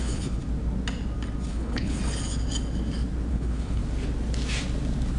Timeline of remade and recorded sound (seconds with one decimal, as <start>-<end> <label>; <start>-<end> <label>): 0.0-0.4 remade; 0.4-1.5 recorded; 1.5-2.0 remade; 2.0-3.3 recorded; 3.3-3.8 remade; 3.8-5.2 recorded